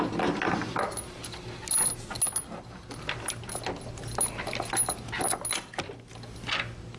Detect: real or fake real